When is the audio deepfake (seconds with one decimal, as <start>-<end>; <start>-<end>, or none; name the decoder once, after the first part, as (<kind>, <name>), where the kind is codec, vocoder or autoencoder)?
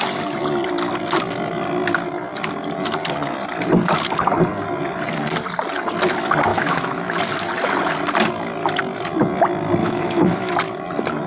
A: 6.5-7.2 (autoencoder, DAC-VAE); 9.8-10.5